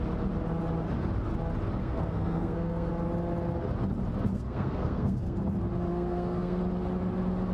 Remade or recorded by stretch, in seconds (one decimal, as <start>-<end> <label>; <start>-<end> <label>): 0.0-1.8 recorded; 1.8-2.9 remade; 2.9-4.3 recorded; 4.3-5.4 remade; 5.4-5.9 recorded; 5.9-6.6 remade; 6.6-7.5 recorded